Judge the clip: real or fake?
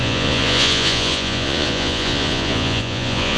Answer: fake